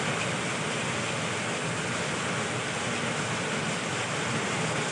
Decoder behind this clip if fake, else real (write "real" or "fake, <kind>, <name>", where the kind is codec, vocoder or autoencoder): real